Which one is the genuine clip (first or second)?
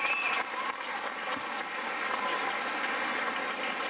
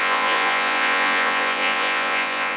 first